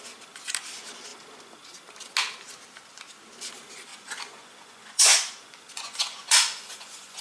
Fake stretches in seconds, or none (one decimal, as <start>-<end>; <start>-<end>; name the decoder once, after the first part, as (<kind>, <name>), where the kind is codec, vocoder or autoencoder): 3.9-7.2 (vocoder, Vocos)